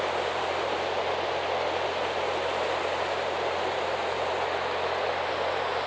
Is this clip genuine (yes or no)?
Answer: yes